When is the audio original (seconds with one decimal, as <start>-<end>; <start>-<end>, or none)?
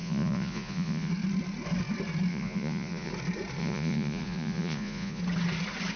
1.1-2.3; 3.1-3.6; 5.2-6.0